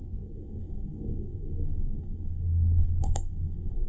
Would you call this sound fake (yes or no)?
yes